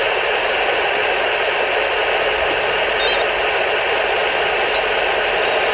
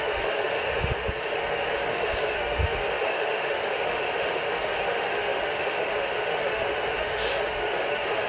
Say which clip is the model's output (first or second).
second